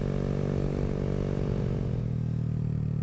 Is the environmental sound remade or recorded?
recorded